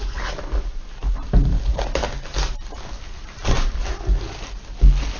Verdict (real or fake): real